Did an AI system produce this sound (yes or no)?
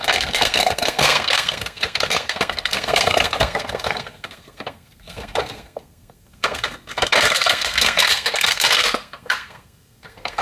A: yes